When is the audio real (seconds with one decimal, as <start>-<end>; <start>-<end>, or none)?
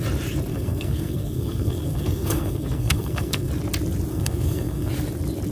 0.0-0.5; 3.5-4.1; 4.9-5.5